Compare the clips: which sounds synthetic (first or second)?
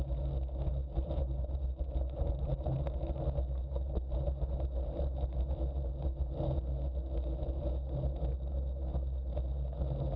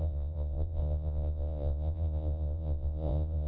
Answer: second